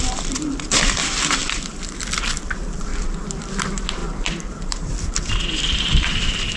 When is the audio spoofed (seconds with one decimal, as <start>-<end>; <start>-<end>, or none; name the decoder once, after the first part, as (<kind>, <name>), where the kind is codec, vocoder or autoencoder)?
0.0-2.9 (vocoder, BigVGAN v2); 3.5-6.6